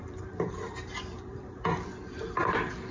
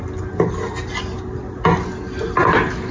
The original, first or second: second